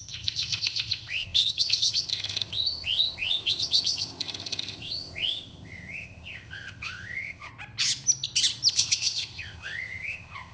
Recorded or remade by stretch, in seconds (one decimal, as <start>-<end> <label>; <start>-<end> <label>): 0.0-7.5 remade; 7.5-8.7 recorded; 8.7-10.5 remade